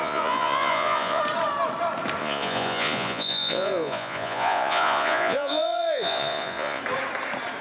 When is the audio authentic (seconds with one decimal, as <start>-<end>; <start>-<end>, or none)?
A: 1.2-2.2; 6.8-7.6